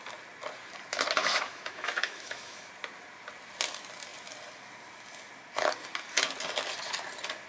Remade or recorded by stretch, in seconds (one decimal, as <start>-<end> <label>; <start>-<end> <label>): 0.0-1.2 recorded; 1.2-2.7 remade; 2.7-7.5 recorded